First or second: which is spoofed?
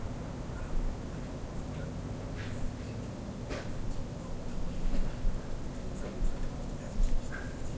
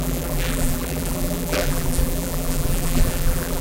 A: second